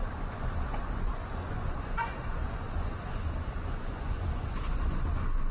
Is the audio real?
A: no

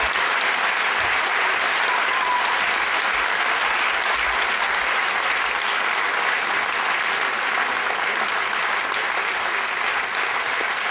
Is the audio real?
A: yes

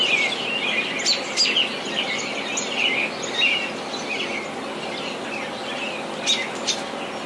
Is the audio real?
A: yes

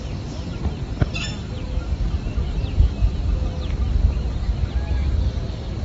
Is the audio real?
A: yes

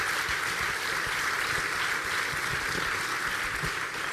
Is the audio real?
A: yes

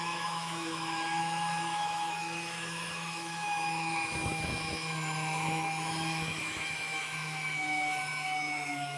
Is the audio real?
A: no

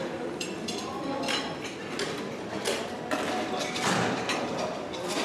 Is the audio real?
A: yes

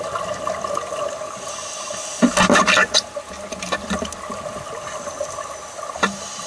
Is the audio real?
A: yes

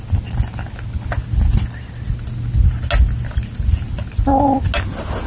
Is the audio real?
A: yes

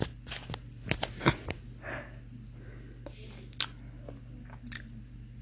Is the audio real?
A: yes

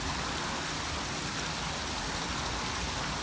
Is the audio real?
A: yes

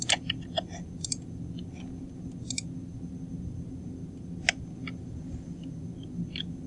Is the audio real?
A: yes